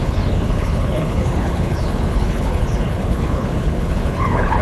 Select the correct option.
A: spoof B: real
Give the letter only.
A